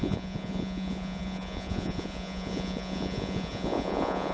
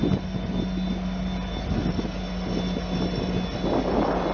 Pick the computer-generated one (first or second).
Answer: first